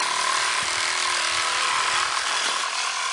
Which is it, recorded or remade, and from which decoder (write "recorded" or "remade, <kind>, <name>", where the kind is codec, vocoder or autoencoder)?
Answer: recorded